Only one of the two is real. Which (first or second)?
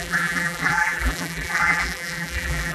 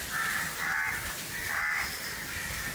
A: second